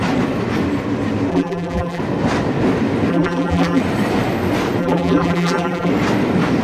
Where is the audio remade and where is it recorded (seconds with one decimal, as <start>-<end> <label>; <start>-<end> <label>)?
0.0-1.3 recorded; 1.3-2.0 remade; 2.0-3.1 recorded; 3.1-3.8 remade; 3.8-4.8 recorded; 4.8-5.9 remade; 5.9-6.6 recorded